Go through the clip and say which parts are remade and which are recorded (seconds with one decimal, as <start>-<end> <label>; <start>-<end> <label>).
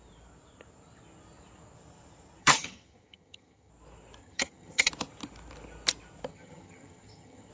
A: 0.0-2.4 recorded; 2.4-3.7 remade; 3.7-4.2 recorded; 4.2-4.9 remade; 4.9-6.3 recorded; 6.3-7.5 remade